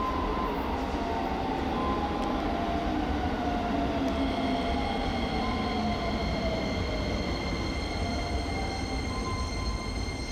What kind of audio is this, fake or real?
real